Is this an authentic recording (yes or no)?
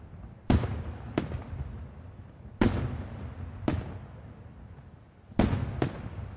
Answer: yes